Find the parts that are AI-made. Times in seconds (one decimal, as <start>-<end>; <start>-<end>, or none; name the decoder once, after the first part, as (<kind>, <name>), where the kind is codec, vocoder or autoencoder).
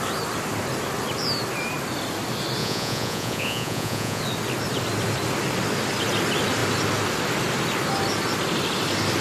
2.6-4.2 (vocoder, Vocos)